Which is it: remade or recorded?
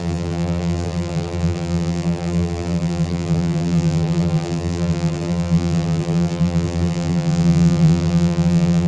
remade